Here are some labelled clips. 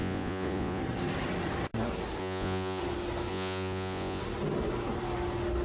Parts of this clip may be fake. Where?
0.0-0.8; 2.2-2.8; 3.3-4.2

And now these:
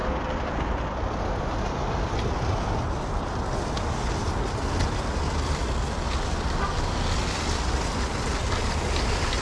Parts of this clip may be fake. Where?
none

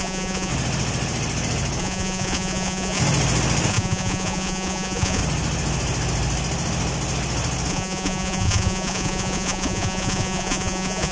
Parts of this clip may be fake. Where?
0.0-0.5; 1.8-3.0; 3.7-5.2; 7.7-11.1

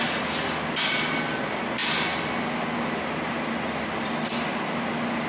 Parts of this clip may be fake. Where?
none

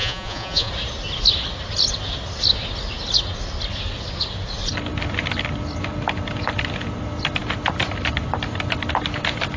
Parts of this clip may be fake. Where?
0.0-0.7